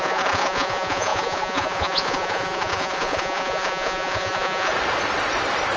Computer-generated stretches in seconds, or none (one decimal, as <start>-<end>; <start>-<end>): 0.0-4.7